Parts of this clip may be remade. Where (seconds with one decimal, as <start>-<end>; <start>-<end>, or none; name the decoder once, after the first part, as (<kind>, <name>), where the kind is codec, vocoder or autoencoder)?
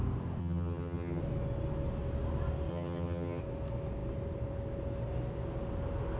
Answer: 0.4-1.2 (vocoder, HiFi-GAN); 2.7-3.4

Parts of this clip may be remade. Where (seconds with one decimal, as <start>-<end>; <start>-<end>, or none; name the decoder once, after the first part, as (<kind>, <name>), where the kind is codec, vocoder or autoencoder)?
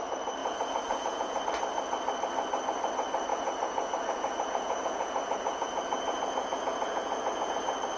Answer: 0.4-1.4 (vocoder, Vocos); 3.3-7.6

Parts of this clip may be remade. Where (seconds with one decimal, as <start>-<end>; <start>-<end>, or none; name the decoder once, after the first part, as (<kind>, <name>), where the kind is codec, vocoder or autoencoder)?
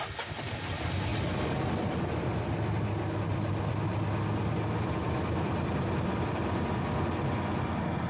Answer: none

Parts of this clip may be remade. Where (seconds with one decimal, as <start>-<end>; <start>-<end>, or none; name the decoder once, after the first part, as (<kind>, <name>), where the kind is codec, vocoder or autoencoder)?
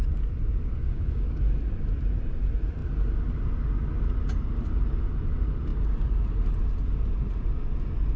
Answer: 0.8-1.4 (codec, DAC)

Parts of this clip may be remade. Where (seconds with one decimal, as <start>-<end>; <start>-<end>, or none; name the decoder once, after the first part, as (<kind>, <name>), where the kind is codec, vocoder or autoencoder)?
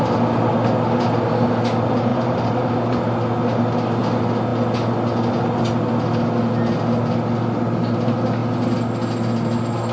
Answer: 2.1-3.0 (vocoder, BigVGAN v2)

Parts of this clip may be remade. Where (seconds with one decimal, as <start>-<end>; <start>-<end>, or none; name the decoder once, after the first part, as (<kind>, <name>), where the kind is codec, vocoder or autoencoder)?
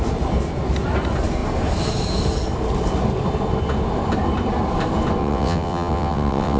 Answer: 5.2-6.6 (vocoder, WaveNeXt)